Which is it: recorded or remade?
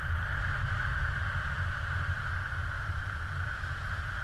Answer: recorded